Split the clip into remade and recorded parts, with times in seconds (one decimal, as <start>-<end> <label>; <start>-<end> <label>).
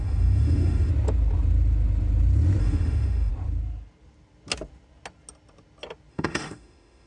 0.0-0.9 remade; 0.9-2.6 recorded; 2.6-3.3 remade; 3.3-6.1 recorded; 6.1-7.1 remade